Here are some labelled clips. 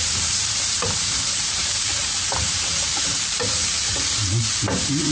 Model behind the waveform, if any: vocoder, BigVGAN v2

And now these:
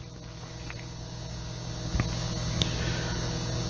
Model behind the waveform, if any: none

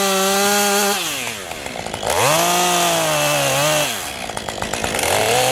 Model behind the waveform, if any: none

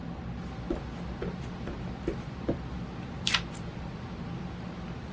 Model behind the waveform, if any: none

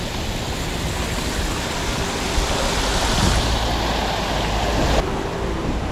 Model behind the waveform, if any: none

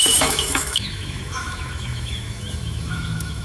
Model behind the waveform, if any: autoencoder, DAC-VAE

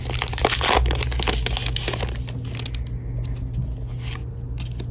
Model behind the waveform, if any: none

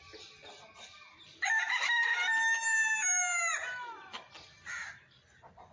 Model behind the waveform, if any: none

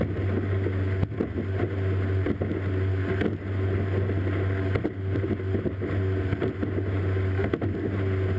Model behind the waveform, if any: none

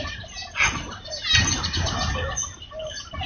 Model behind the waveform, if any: none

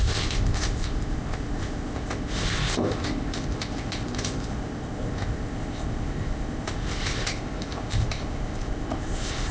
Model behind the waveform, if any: codec, ZipCodec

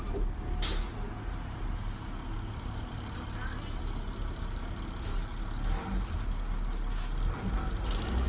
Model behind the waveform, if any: none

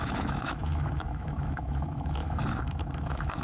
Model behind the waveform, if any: autoencoder, DAC-VAE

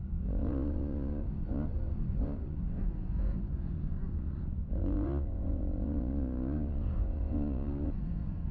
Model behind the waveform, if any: vocoder, Vocos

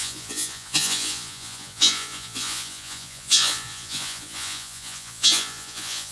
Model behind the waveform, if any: vocoder, Vocos